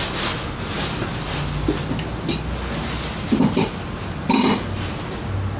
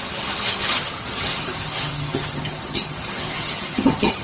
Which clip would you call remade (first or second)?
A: second